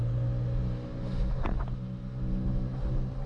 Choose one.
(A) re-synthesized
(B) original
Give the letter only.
B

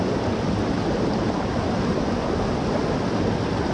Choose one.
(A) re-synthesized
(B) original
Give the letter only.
B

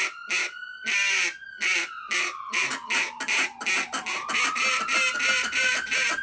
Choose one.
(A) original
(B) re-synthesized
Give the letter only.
A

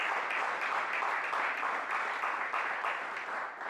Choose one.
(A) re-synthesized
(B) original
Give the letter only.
B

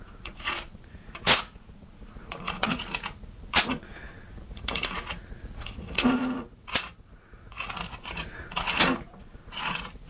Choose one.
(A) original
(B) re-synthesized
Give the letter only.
B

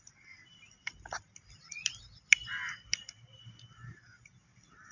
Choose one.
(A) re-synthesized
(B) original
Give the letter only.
B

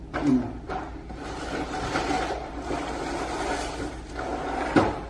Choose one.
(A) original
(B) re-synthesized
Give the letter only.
A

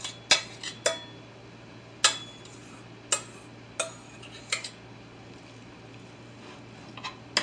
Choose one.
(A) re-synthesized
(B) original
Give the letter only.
B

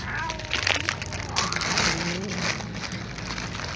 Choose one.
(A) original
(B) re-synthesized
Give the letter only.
A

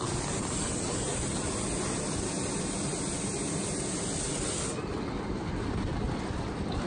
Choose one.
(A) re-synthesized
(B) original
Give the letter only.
B